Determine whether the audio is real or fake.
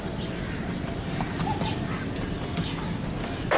real